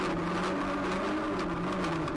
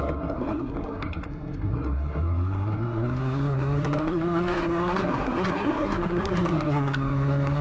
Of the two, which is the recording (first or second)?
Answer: first